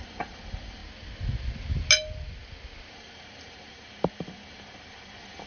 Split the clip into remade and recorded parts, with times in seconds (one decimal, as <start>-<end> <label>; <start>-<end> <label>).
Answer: 0.0-0.8 remade; 0.8-2.9 recorded; 2.9-5.5 remade